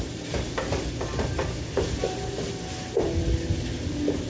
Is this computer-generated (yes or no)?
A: no